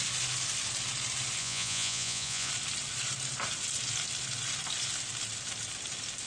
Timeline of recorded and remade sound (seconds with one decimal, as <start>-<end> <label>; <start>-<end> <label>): 0.0-1.4 recorded; 1.4-2.5 remade; 2.5-6.3 recorded